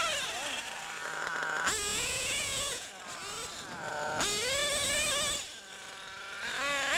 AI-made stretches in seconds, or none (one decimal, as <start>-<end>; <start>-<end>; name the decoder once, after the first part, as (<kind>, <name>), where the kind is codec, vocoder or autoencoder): 1.9-2.9 (vocoder, Vocos)